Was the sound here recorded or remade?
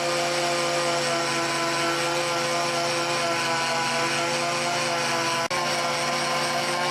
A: recorded